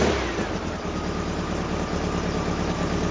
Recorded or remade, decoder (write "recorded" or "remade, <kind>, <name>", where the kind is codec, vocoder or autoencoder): recorded